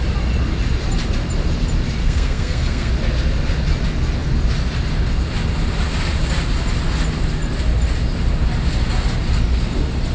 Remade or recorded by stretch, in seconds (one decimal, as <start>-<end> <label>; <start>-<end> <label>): 0.0-2.0 recorded; 2.0-2.9 remade; 2.9-10.1 recorded

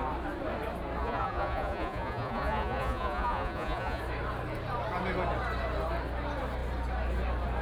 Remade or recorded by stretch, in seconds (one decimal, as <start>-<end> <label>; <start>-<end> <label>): 0.0-1.0 recorded; 1.0-4.0 remade; 4.0-7.6 recorded